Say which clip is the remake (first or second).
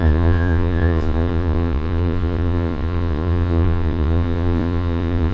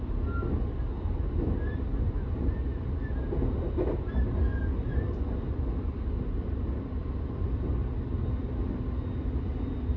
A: first